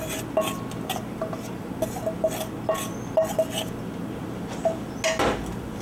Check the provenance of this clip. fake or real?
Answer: real